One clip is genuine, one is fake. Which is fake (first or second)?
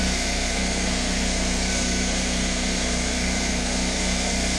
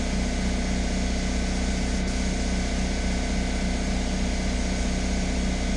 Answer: first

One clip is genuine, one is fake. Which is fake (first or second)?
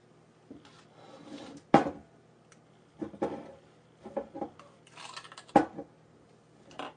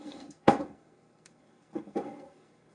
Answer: second